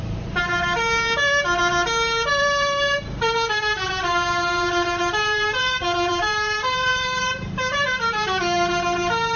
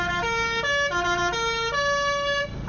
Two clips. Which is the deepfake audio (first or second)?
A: first